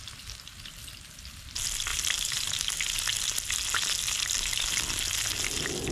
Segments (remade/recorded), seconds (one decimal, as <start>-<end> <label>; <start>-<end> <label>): 0.0-1.9 recorded; 1.9-2.7 remade; 2.7-5.9 recorded